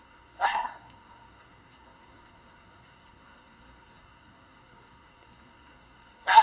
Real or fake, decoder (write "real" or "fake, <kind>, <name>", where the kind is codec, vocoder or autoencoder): fake, codec, SNAC